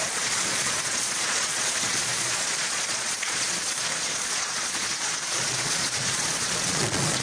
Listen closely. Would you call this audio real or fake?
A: fake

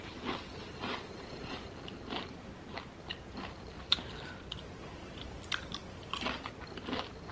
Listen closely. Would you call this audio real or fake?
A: real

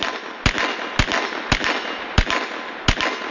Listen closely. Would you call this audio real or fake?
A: real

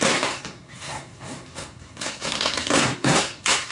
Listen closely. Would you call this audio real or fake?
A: fake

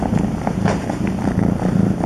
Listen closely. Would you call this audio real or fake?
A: fake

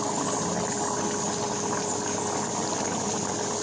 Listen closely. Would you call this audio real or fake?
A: real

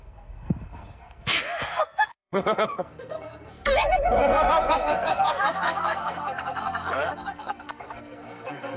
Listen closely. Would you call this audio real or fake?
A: fake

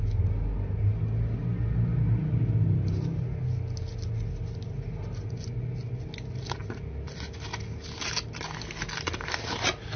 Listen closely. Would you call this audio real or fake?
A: real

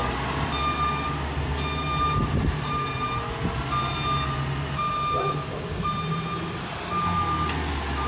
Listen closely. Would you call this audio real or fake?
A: real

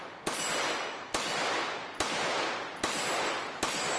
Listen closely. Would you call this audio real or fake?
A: real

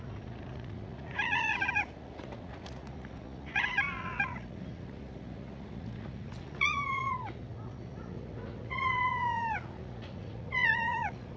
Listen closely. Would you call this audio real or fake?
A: fake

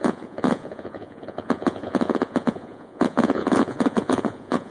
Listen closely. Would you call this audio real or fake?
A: fake